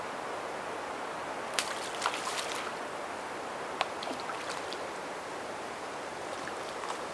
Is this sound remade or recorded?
recorded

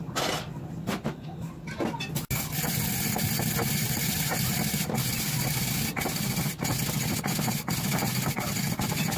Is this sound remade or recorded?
recorded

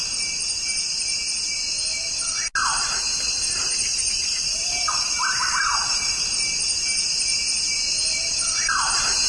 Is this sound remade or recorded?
recorded